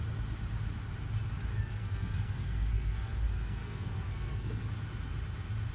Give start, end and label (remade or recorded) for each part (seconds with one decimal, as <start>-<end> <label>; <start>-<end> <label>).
0.0-1.5 recorded; 1.5-4.7 remade; 4.7-5.7 recorded